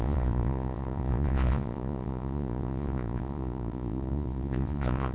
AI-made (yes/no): yes